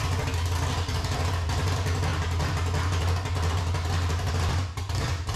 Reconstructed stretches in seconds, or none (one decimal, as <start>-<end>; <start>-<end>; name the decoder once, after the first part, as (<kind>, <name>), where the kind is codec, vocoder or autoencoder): none